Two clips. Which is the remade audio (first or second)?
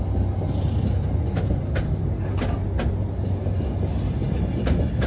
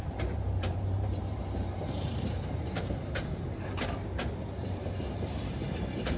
second